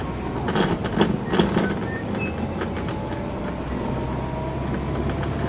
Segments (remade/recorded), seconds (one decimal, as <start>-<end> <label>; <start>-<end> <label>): 0.0-5.5 recorded